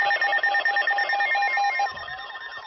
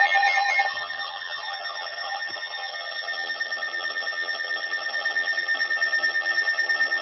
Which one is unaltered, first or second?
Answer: first